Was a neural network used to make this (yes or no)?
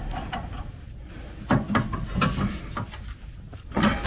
no